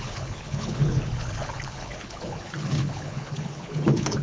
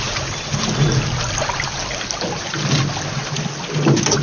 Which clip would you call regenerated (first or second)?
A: first